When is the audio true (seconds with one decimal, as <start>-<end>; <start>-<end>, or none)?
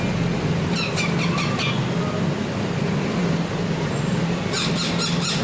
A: 0.0-3.2; 4.4-5.4